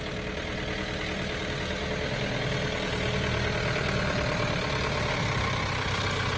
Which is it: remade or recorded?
recorded